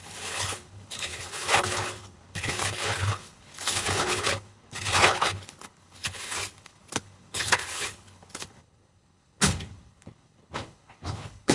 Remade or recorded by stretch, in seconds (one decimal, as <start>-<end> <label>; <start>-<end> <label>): 0.0-11.5 remade